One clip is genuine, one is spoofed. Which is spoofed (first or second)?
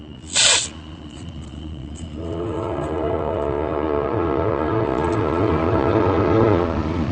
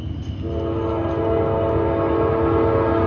first